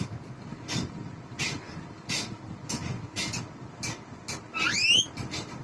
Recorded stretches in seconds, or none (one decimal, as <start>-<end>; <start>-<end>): 0.0-5.6